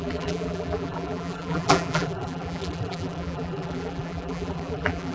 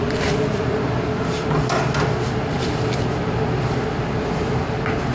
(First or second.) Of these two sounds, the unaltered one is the second